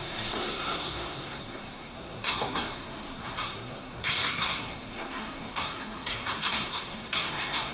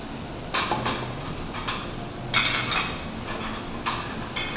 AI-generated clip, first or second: first